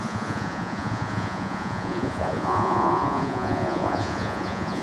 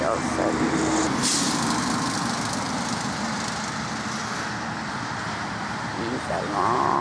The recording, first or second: second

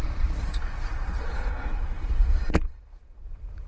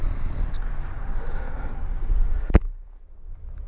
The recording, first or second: second